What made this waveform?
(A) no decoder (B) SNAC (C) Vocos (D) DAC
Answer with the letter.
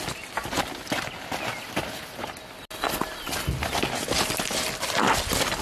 A